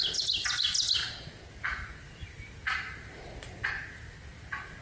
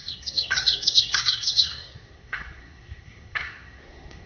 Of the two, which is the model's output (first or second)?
second